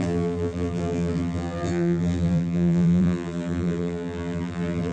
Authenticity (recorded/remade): remade